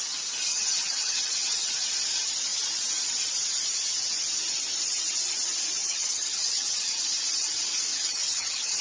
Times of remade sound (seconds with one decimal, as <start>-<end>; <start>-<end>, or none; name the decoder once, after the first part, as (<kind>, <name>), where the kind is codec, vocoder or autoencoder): 0.5-1.2 (vocoder, HiFi-GAN); 5.8-7.0; 7.9-8.8